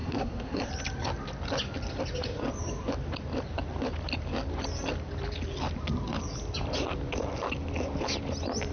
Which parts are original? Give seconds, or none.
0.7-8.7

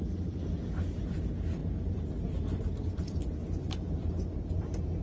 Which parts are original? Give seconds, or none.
0.0-1.6; 4.6-5.0